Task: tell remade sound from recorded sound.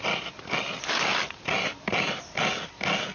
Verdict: recorded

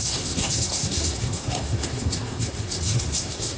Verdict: remade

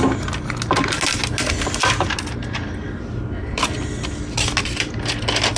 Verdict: recorded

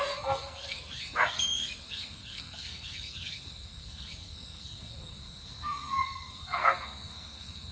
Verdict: remade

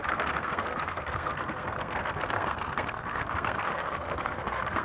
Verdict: remade